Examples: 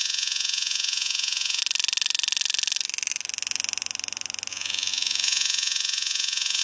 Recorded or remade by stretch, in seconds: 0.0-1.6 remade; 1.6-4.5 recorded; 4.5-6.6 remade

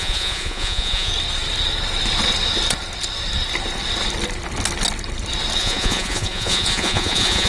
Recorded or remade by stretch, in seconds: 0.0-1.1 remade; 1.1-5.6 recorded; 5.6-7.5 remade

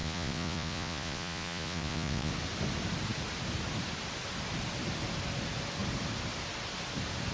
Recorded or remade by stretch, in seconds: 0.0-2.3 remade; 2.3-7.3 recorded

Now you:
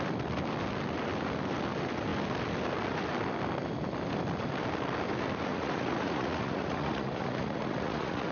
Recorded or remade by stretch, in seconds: 0.0-5.5 recorded; 5.5-8.3 remade

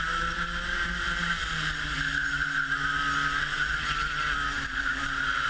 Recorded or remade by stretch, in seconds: 0.0-5.5 recorded